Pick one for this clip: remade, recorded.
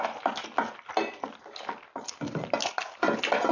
recorded